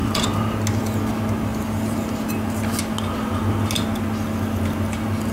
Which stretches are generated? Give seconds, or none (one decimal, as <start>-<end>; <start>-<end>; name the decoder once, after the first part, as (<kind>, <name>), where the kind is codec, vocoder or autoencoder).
none